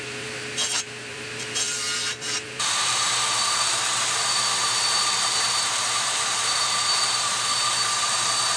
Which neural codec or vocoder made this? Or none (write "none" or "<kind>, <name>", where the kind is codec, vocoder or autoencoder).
vocoder, BigVGAN v2